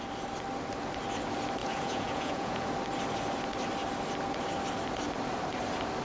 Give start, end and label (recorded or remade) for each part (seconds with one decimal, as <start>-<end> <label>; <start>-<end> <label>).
0.0-1.6 recorded; 1.6-2.7 remade; 2.7-6.0 recorded